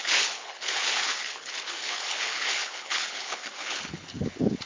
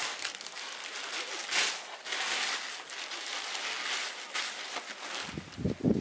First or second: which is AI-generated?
first